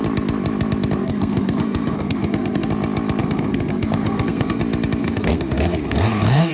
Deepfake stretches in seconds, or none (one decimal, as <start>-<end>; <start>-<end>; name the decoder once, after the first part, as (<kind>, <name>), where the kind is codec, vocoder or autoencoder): 1.0-2.7 (codec, SNAC); 3.2-4.6; 5.0-6.5